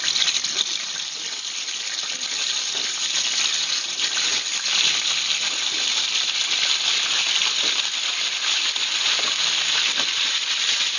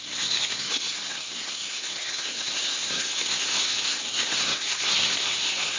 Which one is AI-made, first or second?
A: second